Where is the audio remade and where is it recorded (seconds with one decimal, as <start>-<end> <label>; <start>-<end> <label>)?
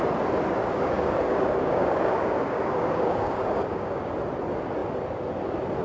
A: 0.0-0.6 recorded; 0.6-4.1 remade; 4.1-5.8 recorded